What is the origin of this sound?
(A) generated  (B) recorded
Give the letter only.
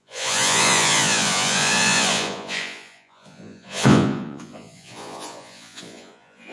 A